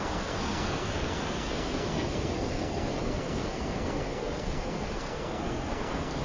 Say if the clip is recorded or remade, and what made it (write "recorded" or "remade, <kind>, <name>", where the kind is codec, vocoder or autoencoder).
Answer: remade, codec, SNAC